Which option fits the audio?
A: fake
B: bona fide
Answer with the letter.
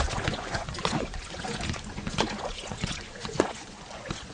A